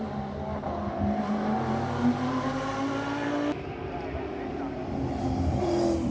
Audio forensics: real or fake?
real